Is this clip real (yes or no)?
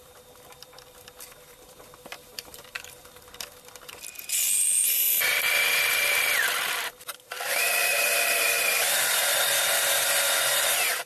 no